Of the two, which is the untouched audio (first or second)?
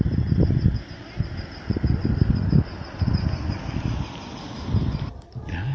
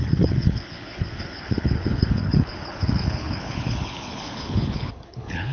first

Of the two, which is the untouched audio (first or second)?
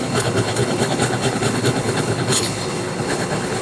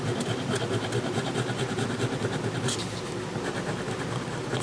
second